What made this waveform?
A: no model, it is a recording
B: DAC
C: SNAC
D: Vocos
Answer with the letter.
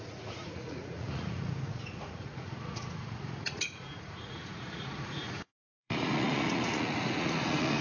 D